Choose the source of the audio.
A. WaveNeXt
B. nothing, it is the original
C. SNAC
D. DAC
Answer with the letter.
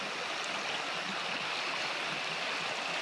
B